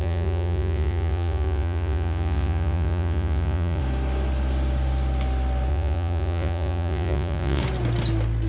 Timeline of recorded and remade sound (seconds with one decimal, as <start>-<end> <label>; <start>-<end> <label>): 0.0-3.8 remade; 3.8-5.7 recorded; 5.7-7.6 remade; 7.6-8.5 recorded